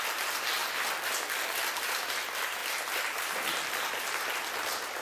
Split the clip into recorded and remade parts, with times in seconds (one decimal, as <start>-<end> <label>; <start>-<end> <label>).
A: 0.0-5.0 recorded